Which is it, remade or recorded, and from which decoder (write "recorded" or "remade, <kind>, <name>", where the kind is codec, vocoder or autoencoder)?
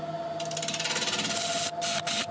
recorded